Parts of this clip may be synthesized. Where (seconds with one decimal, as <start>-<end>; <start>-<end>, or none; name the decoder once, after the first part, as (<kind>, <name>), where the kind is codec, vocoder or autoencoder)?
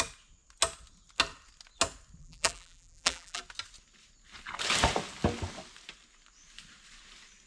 2.2-3.4 (vocoder, BigVGAN v2)